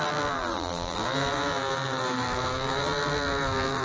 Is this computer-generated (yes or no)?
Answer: yes